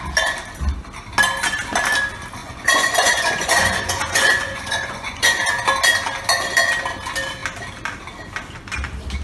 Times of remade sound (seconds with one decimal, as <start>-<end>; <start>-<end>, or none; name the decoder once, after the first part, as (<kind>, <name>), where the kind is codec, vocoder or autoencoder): 2.4-5.5 (vocoder, Vocos)